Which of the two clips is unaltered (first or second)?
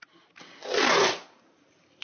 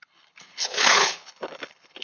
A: first